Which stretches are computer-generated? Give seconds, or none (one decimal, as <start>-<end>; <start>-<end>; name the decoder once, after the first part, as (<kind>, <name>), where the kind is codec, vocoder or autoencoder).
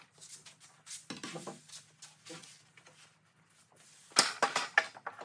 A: none